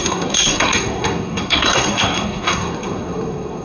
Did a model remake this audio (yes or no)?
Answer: yes